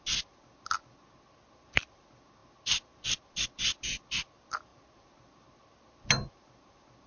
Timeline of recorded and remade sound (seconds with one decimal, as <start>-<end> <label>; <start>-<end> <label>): 0.0-7.1 recorded